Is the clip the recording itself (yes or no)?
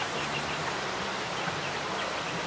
no